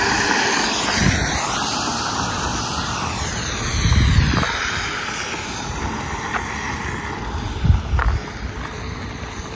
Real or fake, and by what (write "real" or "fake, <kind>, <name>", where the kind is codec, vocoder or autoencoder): real